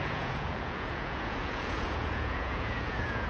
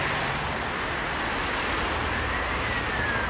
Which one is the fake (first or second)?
first